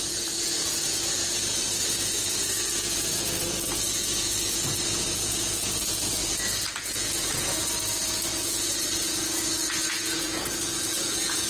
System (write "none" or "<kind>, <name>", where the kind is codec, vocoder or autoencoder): vocoder, Vocos